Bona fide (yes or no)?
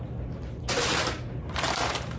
yes